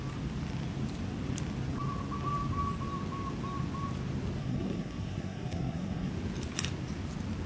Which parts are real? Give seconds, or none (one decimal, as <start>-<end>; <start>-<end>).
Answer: 0.0-4.4; 6.1-7.5